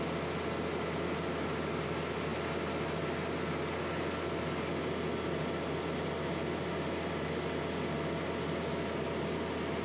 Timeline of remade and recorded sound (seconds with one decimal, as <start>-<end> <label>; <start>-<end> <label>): 0.0-9.8 recorded